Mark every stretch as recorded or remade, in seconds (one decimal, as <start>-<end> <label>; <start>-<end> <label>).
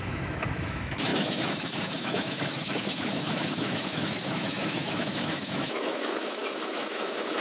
0.0-7.4 remade